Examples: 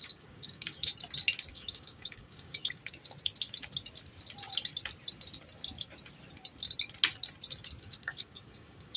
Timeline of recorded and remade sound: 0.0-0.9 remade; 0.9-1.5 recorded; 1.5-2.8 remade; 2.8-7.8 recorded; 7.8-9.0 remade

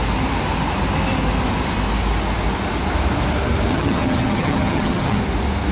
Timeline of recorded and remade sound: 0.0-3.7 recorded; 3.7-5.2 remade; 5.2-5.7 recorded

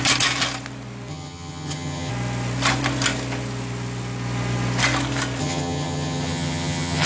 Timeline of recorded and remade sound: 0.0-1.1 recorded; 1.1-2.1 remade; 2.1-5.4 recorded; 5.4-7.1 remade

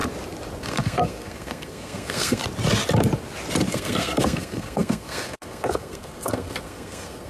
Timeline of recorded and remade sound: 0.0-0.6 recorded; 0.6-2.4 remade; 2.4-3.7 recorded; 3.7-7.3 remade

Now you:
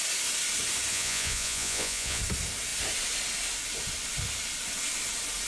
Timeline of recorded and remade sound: 0.0-0.9 recorded; 0.9-2.2 remade; 2.2-5.5 recorded

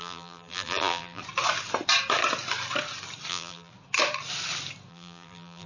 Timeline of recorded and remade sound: 0.0-1.2 remade; 1.2-3.3 recorded; 3.3-3.7 remade; 3.7-4.9 recorded; 4.9-5.7 remade